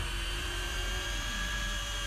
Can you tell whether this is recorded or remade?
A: remade